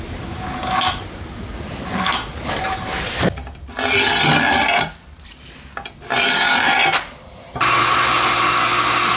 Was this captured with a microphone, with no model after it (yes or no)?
yes